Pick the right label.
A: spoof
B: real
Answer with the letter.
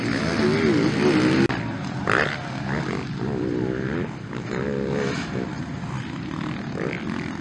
B